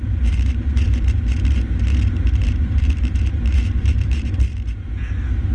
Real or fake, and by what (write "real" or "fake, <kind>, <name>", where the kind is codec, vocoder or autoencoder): fake, vocoder, BigVGAN v2